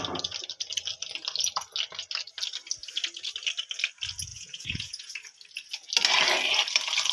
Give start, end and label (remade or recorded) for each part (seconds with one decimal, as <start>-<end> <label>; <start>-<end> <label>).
0.0-4.3 recorded; 4.3-5.1 remade; 5.1-7.1 recorded